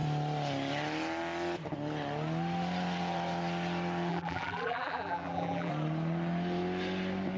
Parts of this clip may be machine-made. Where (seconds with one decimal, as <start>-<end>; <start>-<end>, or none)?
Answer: 4.1-5.7

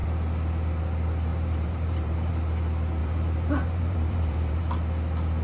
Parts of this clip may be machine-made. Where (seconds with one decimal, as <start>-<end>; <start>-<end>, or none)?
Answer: 1.3-2.3; 3.0-4.6

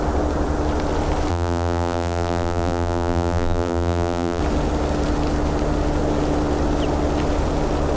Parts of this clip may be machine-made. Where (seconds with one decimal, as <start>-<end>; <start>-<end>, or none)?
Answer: 1.3-4.4